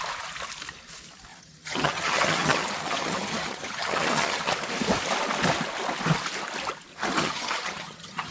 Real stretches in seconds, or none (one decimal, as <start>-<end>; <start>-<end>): 0.0-1.3; 4.5-7.2

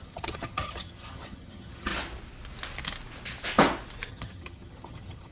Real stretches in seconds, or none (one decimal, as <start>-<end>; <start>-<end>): 1.9-4.1

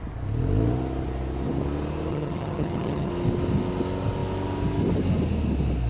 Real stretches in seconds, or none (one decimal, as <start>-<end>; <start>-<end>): 0.0-2.1; 3.1-5.9